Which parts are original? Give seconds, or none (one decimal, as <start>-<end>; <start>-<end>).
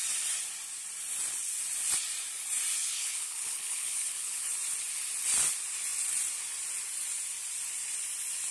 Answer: 0.0-2.8; 4.5-8.5